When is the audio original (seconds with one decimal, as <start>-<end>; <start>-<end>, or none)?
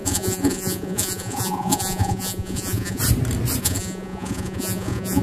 3.0-3.6